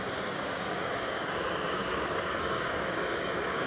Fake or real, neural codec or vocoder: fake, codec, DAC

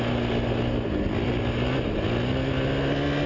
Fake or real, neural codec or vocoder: real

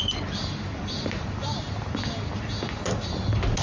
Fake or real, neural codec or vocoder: real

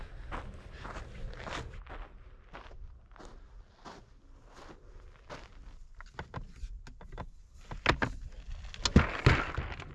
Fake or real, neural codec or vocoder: real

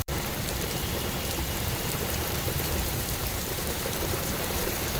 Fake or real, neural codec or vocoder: fake, vocoder, BigVGAN v2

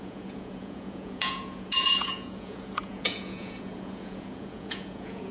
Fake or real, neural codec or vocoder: fake, vocoder, Vocos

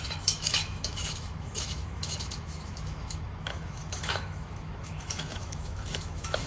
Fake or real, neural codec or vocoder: fake, autoencoder, DAC-VAE